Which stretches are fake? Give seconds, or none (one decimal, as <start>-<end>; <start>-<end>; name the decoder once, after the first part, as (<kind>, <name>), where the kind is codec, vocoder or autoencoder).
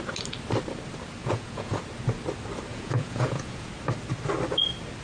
1.2-1.8 (vocoder, Vocos); 2.7-3.7